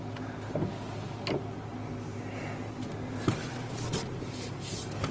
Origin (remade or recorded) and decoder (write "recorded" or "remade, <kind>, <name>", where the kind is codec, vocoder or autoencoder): recorded